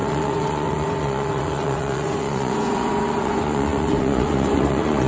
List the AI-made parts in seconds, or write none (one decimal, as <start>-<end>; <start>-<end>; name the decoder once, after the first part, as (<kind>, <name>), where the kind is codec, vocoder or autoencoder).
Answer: 0.0-5.1 (vocoder, Vocos)